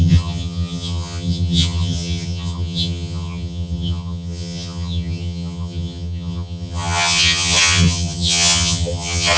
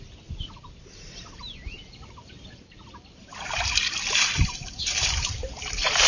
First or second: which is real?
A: second